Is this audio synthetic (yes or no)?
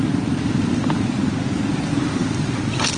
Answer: no